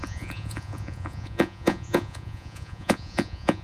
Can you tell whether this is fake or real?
fake